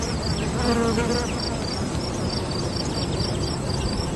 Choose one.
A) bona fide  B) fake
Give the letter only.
A